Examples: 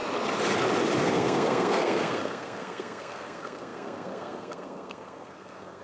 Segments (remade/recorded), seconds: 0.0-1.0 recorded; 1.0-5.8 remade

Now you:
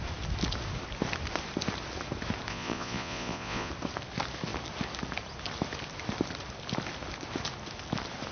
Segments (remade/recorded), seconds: 0.0-2.5 recorded; 2.5-3.7 remade; 3.7-8.3 recorded

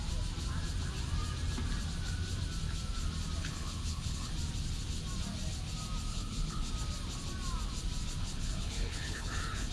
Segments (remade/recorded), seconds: 0.0-3.4 recorded; 3.4-4.3 remade; 4.3-6.1 recorded; 6.1-6.7 remade; 6.7-8.2 recorded; 8.2-9.7 remade

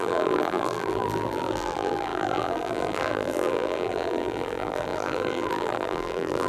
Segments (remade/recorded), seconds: 0.0-6.5 remade

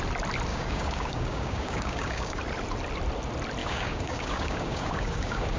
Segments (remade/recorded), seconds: 0.0-0.5 recorded; 0.5-2.4 remade; 2.4-3.6 recorded; 3.6-5.6 remade

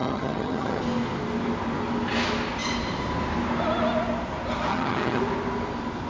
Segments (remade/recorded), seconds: 0.0-0.8 remade; 0.8-4.7 recorded; 4.7-5.2 remade; 5.2-6.1 recorded

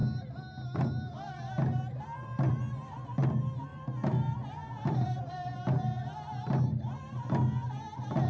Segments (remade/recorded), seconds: 0.0-8.3 recorded